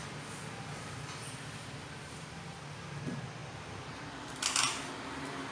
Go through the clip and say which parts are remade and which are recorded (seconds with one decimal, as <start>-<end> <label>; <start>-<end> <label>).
0.0-5.5 recorded